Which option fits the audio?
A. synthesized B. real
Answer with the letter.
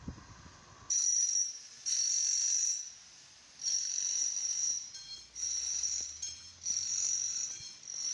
B